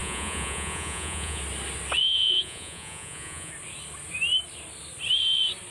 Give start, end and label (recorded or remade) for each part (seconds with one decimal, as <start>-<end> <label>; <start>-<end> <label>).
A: 0.0-1.4 remade; 1.4-2.0 recorded; 2.0-3.5 remade; 3.5-5.7 recorded

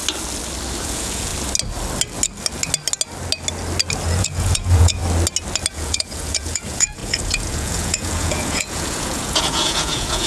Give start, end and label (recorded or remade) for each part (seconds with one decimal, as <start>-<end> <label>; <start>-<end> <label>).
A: 0.0-0.8 recorded; 0.8-1.3 remade; 1.3-4.2 recorded; 4.2-5.0 remade; 5.0-5.7 recorded; 5.7-10.3 remade

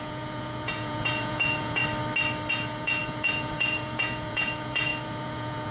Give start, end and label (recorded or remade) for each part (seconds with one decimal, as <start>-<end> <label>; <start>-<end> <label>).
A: 0.0-1.8 remade; 1.8-2.5 recorded; 2.5-5.7 remade